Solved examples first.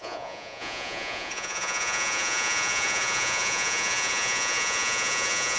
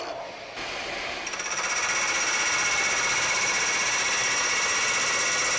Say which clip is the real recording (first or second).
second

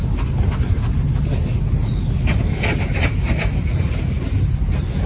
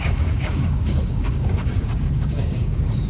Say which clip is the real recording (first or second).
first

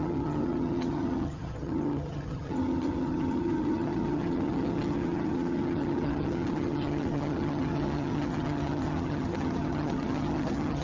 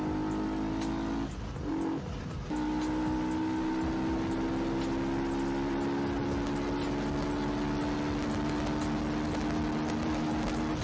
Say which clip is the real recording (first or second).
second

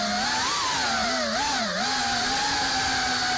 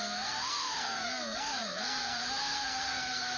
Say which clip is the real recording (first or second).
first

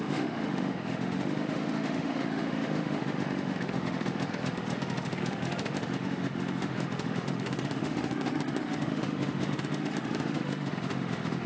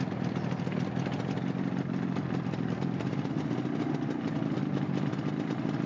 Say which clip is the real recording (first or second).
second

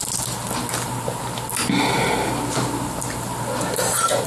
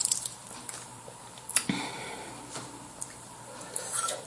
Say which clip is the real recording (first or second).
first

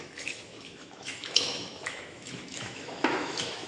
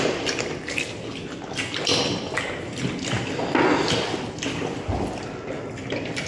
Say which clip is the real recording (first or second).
second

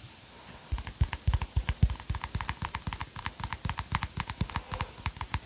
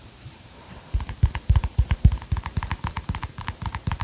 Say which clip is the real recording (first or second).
first